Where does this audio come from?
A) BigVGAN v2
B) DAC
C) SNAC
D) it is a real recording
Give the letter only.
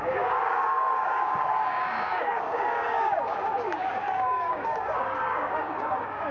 B